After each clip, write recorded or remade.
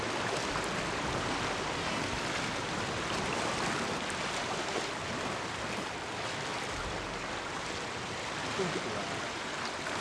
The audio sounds recorded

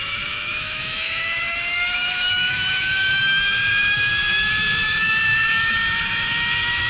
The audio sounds remade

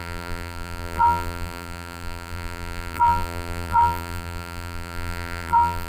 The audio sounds remade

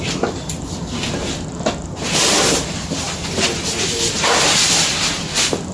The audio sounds recorded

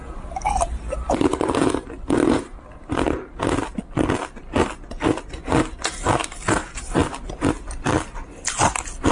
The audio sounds recorded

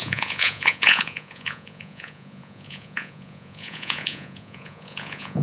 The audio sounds remade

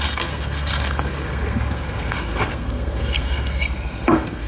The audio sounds remade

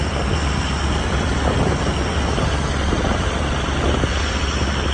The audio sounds recorded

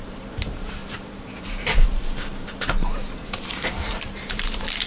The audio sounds remade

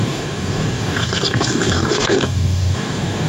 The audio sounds remade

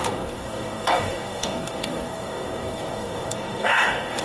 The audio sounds remade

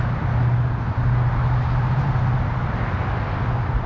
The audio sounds recorded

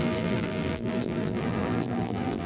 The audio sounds remade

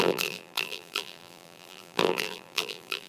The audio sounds remade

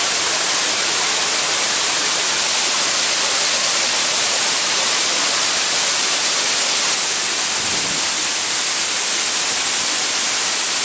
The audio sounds recorded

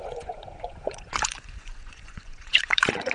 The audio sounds remade